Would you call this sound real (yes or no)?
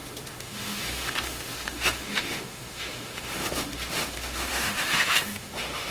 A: no